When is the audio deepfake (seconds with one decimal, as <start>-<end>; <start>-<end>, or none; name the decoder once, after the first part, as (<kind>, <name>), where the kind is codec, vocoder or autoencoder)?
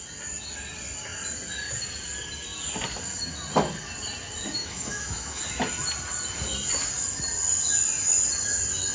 4.6-5.4 (autoencoder, DAC-VAE)